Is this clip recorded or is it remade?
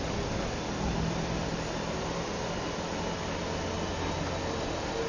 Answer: recorded